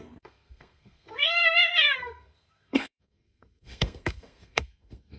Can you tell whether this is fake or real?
fake